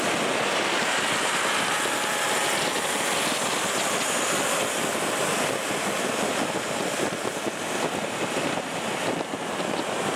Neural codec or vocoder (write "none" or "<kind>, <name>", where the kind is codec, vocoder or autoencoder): none